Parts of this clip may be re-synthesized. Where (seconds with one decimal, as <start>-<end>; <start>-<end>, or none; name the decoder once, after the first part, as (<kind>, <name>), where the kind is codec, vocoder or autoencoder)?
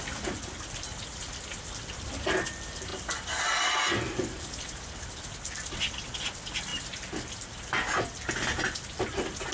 none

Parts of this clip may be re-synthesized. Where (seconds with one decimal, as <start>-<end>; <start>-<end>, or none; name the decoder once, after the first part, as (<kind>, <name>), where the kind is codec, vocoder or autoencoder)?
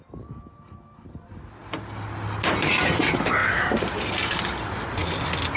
none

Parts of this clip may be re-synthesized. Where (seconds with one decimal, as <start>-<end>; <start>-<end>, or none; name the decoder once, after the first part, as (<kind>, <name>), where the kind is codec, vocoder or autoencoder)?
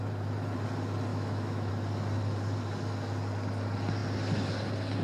1.1-1.7 (autoencoder, DAC-VAE)